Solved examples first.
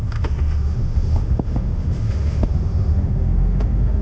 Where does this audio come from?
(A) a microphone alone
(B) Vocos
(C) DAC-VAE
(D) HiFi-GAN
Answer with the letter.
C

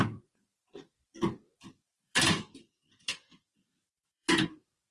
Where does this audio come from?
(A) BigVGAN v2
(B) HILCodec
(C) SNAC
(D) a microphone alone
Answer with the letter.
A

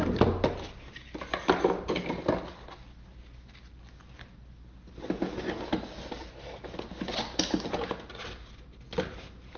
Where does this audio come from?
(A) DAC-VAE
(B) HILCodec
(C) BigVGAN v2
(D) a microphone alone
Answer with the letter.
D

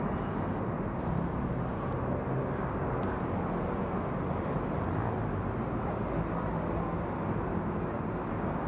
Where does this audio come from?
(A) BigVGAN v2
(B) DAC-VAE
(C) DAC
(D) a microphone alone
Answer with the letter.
D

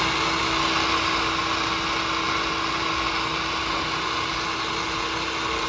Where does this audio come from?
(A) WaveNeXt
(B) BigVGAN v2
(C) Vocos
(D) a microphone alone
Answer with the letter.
D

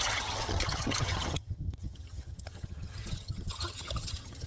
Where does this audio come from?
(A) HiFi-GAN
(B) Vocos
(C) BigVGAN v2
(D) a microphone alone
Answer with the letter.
A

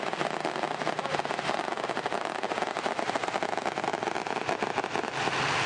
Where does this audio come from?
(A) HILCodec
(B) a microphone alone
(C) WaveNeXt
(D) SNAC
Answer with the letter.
B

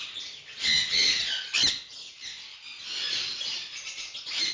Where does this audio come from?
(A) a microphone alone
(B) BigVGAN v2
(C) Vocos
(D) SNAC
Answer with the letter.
A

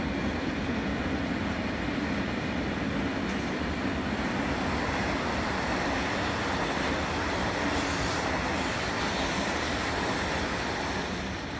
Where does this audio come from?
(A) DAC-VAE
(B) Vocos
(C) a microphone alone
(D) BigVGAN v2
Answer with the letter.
C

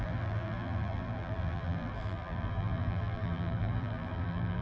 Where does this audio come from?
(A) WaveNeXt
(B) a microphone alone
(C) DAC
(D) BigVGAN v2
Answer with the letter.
D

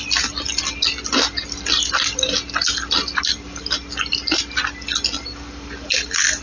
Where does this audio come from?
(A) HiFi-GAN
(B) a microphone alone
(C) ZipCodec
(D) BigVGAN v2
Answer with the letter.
B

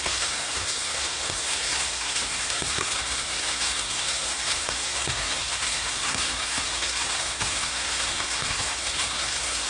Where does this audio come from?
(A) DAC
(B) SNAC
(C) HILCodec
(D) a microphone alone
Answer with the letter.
B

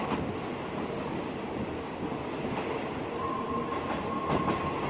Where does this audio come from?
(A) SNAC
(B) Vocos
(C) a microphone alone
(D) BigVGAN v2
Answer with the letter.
C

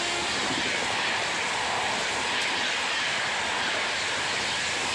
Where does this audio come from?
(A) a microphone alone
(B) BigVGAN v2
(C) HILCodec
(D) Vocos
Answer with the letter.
A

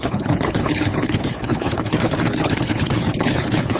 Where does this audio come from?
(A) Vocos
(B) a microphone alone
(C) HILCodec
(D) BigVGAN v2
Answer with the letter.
C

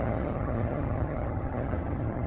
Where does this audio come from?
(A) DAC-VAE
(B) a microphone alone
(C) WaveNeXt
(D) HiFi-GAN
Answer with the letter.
D